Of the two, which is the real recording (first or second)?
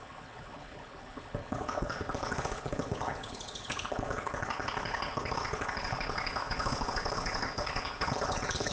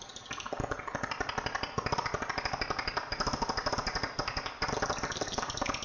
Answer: second